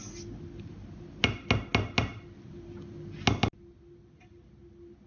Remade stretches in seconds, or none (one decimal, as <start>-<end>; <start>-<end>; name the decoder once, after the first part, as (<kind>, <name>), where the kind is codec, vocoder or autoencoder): none